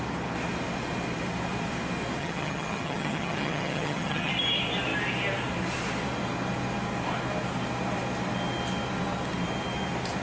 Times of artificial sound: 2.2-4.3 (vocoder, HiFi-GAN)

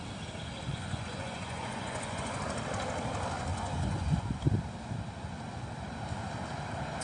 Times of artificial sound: 0.7-2.4 (vocoder, Vocos); 3.5-4.4

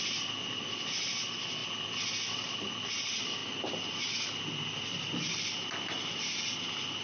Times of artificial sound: none

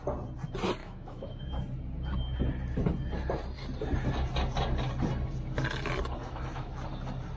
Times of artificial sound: 0.8-1.4 (autoencoder, DAC-VAE); 6.2-6.7

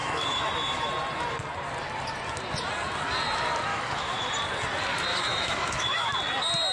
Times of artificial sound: 0.0-0.9 (autoencoder, DAC-VAE); 3.7-4.3; 5.1-6.1

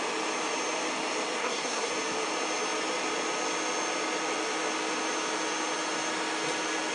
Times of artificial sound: 1.4-1.9 (codec, SNAC)

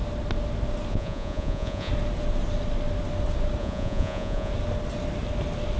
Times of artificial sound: 0.9-1.9 (vocoder, Vocos); 3.6-4.5